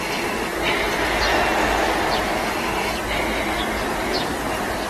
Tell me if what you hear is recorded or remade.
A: recorded